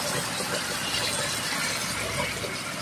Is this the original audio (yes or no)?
yes